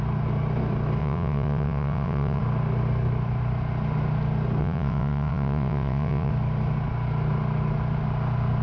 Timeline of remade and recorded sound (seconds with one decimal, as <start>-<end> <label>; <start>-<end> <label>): 0.0-1.0 recorded; 1.0-2.4 remade; 2.4-4.6 recorded; 4.6-6.3 remade; 6.3-8.6 recorded